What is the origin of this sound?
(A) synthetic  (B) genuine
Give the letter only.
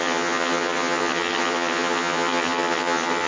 A